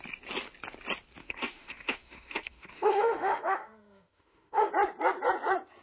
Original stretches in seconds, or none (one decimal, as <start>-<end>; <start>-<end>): 0.0-1.2; 4.7-5.8